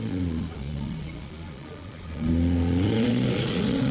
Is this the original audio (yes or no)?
no